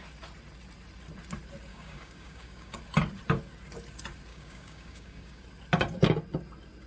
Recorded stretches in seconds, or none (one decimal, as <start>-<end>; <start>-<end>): 0.0-1.7; 2.8-4.3; 5.4-6.9